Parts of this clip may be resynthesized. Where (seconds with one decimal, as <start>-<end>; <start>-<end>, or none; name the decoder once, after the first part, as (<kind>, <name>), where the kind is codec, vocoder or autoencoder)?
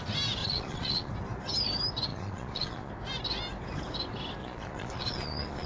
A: 0.4-1.1 (vocoder, Vocos); 2.1-2.9; 4.4-5.7